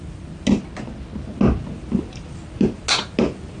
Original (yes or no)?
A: yes